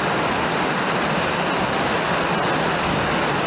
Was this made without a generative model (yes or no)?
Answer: yes